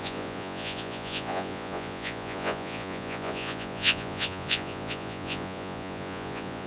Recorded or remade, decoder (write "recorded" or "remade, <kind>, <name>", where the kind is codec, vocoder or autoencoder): remade, vocoder, Vocos